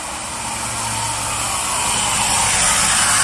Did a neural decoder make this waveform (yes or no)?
no